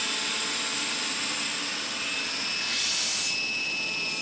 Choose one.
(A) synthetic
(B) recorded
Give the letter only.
B